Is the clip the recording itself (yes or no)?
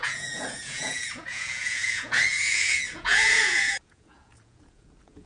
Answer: no